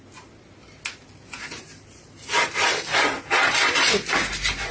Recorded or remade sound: recorded